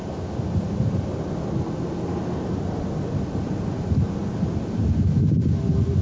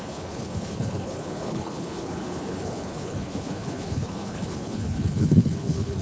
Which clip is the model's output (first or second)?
second